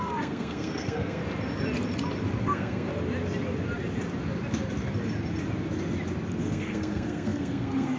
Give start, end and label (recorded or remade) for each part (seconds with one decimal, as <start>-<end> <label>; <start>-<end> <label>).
0.0-1.2 remade; 1.2-2.4 recorded; 2.4-2.9 remade; 2.9-6.4 recorded; 6.4-8.0 remade